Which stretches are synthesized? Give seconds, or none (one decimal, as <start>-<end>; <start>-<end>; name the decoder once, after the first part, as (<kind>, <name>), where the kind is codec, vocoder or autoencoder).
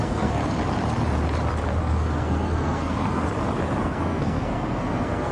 0.0-0.4 (codec, SNAC); 1.8-3.2; 3.8-5.3